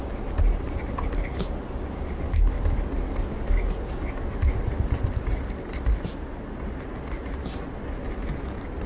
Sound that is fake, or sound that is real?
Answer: real